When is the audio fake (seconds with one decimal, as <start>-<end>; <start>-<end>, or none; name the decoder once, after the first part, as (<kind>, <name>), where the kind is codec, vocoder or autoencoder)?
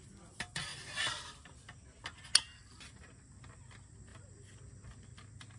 4.1-4.6 (vocoder, BigVGAN v2)